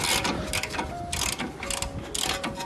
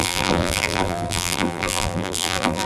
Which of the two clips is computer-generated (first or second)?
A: second